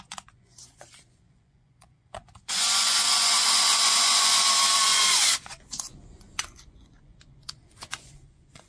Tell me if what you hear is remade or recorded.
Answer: remade